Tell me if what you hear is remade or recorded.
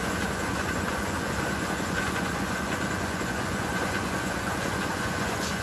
remade